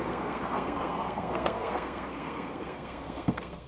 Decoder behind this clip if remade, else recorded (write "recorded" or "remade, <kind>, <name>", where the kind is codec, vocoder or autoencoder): remade, codec, SNAC